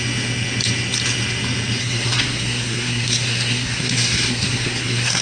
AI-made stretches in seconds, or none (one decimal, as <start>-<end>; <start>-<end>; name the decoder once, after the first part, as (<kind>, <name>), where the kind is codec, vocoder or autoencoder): 1.8-5.2 (codec, SNAC)